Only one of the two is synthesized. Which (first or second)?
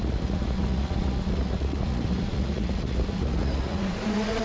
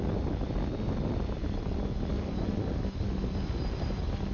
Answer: first